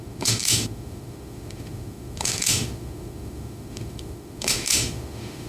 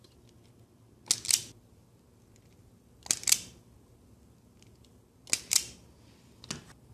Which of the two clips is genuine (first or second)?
second